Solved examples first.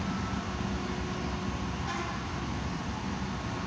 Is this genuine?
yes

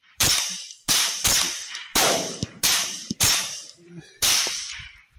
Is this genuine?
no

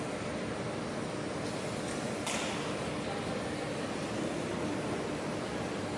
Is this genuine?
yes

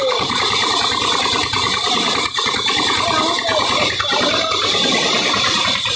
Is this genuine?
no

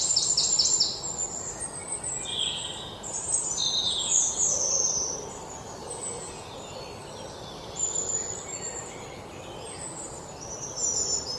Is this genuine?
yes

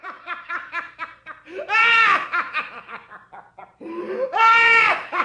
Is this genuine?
no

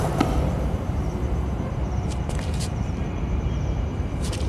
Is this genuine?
no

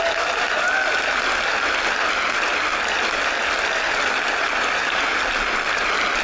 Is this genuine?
yes